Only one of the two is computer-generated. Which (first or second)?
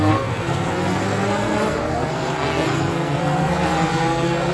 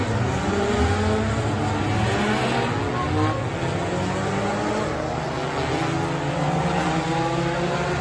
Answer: first